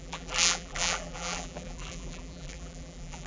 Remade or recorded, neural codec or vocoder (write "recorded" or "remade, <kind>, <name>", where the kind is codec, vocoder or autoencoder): remade, vocoder, BigVGAN v2